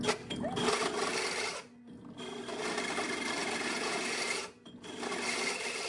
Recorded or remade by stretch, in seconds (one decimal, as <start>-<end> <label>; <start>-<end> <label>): 0.0-3.4 recorded; 3.4-4.0 remade; 4.0-5.9 recorded